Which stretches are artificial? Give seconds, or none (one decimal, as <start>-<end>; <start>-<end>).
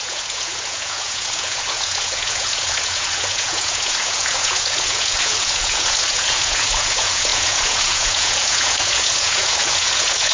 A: 0.0-10.3